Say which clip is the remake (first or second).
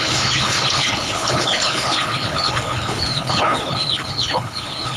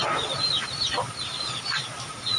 first